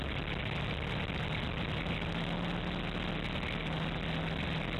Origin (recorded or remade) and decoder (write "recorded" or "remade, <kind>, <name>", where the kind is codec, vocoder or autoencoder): recorded